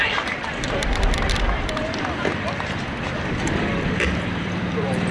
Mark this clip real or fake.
fake